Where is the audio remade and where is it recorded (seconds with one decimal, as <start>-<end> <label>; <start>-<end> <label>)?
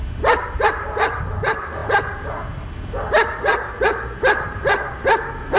0.0-5.6 recorded